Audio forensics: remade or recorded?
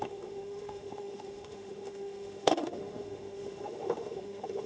remade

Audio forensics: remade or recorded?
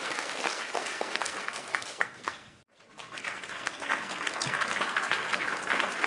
remade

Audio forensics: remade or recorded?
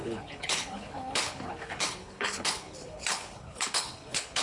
remade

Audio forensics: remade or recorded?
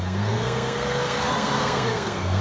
remade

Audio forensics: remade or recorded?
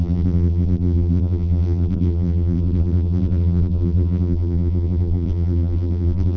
remade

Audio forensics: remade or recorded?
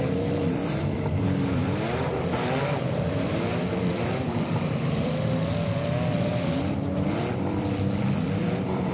remade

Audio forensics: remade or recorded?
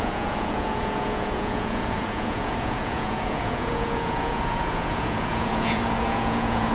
remade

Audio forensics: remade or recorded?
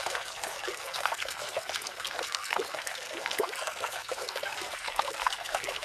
remade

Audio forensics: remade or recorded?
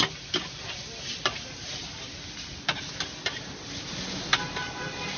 recorded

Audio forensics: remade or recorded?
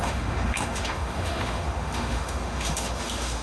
remade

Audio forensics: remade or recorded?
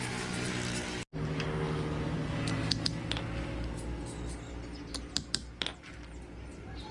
recorded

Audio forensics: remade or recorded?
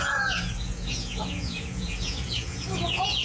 remade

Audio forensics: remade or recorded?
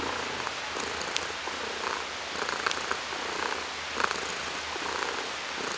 recorded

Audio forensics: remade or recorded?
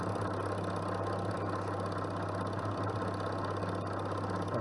recorded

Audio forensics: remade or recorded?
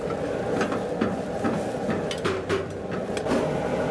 recorded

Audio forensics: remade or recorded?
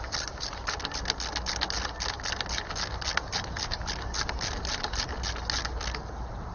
recorded